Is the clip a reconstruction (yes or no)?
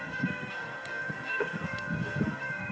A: yes